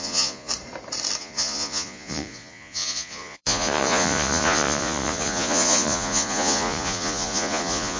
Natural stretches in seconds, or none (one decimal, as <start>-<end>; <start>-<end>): 0.5-1.2